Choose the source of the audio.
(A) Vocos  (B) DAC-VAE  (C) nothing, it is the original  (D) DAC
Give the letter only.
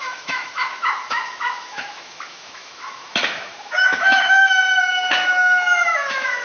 B